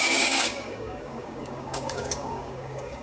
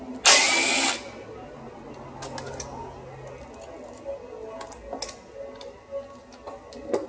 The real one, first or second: second